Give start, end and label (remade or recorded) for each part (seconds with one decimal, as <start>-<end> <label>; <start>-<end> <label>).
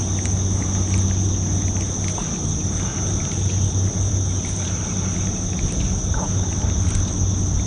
0.0-7.7 recorded